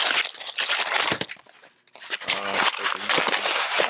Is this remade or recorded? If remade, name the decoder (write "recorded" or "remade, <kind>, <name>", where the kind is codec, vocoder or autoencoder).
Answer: recorded